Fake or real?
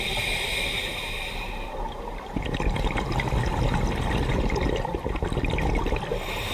real